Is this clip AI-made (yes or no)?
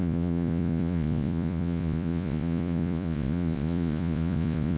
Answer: yes